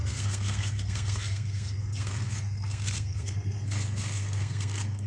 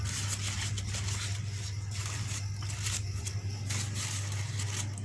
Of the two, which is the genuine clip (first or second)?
second